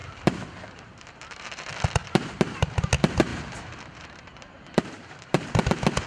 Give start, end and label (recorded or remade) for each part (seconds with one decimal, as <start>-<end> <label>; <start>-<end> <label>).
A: 0.0-1.6 remade; 1.6-2.0 recorded; 2.0-2.9 remade; 2.9-3.3 recorded; 3.3-5.6 remade; 5.6-6.1 recorded